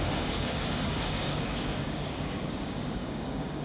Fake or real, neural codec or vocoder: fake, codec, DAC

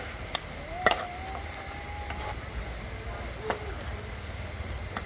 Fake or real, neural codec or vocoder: real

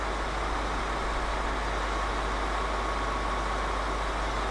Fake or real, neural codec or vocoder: real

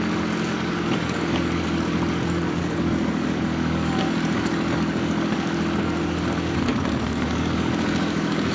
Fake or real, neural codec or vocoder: fake, codec, DAC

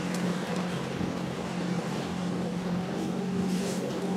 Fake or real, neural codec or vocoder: fake, codec, DAC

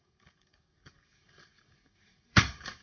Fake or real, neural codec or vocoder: fake, codec, DAC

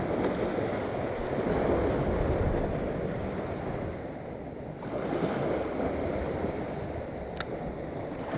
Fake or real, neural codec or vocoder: real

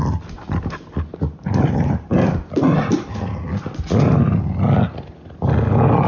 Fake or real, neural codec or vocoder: real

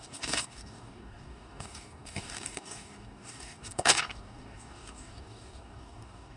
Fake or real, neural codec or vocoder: fake, codec, DAC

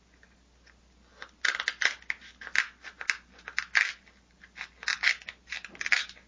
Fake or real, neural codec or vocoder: real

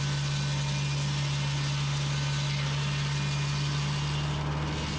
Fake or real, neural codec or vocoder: real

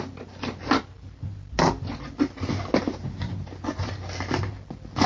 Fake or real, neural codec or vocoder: real